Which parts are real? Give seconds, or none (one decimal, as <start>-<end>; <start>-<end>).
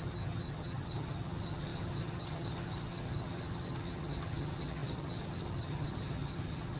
none